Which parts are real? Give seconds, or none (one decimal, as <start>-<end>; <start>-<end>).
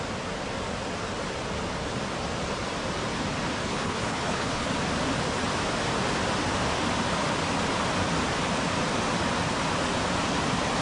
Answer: 0.0-3.7; 4.7-10.8